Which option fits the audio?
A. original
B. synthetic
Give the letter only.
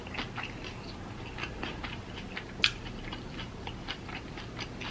A